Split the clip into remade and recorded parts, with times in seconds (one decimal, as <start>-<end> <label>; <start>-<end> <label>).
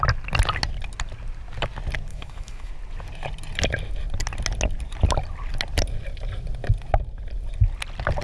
0.0-2.1 recorded; 2.1-2.7 remade; 2.7-8.2 recorded